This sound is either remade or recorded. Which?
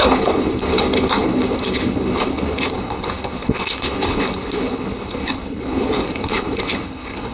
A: remade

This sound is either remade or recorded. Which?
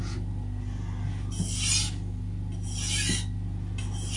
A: recorded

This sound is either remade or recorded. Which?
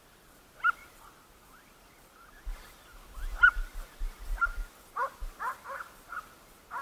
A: recorded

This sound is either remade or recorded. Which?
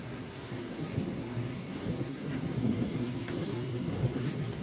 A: remade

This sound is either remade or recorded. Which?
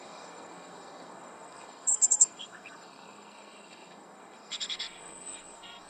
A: remade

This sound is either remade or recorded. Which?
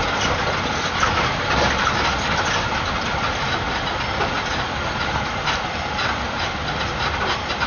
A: recorded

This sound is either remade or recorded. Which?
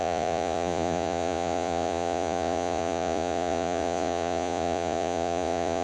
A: remade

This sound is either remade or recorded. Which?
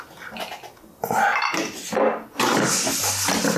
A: recorded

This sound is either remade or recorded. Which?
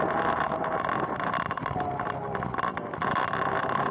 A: recorded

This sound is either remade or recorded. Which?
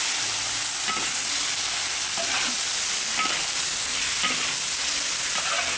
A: recorded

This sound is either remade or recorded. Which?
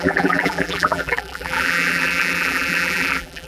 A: remade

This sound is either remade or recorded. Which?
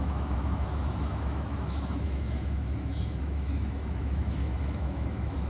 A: remade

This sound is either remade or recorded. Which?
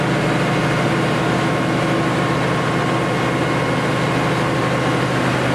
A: recorded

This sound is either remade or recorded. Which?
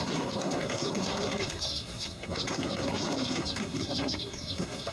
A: remade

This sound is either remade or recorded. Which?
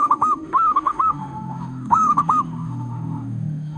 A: remade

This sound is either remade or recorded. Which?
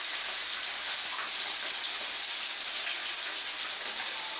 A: recorded